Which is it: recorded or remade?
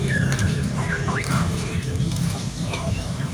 remade